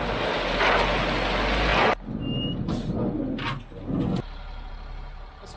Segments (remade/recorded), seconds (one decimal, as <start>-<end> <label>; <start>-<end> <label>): 0.0-5.6 recorded